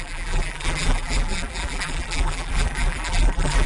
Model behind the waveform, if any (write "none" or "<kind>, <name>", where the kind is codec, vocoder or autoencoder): vocoder, BigVGAN v2